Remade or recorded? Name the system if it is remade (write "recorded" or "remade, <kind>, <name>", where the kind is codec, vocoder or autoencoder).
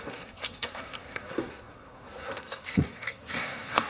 remade, codec, SNAC